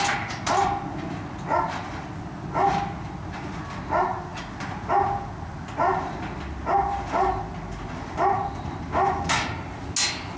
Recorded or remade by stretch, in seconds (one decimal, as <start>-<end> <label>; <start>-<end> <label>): 0.0-10.4 recorded